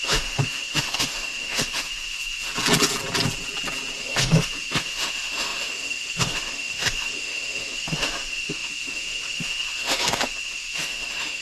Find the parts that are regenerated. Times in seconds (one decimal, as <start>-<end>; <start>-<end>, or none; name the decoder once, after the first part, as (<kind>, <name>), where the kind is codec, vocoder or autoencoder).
0.0-2.5 (autoencoder, DAC-VAE); 4.0-11.4